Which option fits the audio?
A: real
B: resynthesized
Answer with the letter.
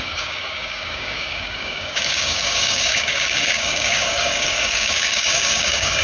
B